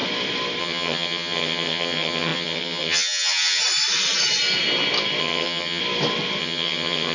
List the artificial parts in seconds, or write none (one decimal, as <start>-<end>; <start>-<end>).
0.6-3.6; 5.2-5.8; 6.4-7.1